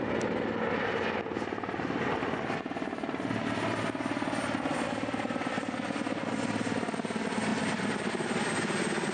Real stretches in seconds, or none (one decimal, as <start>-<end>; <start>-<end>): 0.0-9.1